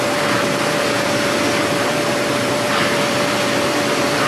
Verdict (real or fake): fake